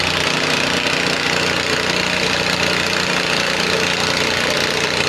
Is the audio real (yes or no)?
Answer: yes